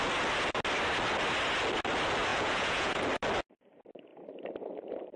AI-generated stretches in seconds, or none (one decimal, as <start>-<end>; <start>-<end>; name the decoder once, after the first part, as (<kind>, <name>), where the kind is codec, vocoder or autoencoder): 2.3-3.0 (vocoder, Vocos)